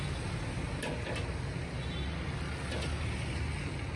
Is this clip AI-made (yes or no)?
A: no